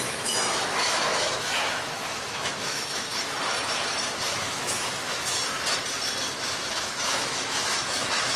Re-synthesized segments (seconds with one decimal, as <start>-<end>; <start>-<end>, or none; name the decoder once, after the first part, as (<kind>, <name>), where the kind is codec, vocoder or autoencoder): 0.0-3.1 (autoencoder, DAC-VAE); 4.4-5.4; 6.3-8.4